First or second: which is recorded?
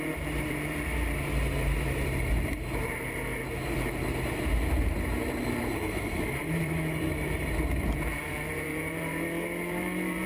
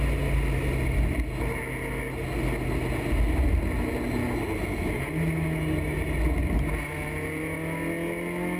second